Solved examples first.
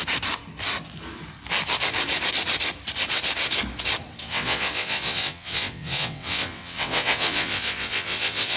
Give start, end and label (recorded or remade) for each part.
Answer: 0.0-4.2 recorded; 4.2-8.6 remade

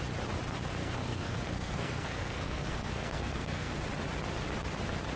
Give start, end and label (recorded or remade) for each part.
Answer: 0.0-0.8 recorded; 0.8-3.8 remade; 3.8-5.2 recorded